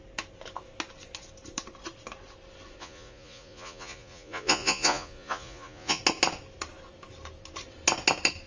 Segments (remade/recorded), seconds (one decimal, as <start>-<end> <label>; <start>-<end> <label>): 0.0-2.8 recorded; 2.8-6.0 remade; 6.0-8.5 recorded